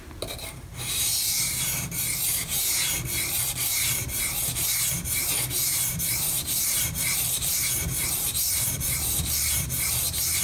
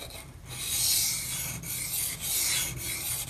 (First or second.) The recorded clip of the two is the second